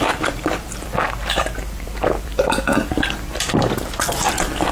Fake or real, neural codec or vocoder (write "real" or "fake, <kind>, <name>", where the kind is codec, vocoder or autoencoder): fake, vocoder, BigVGAN v2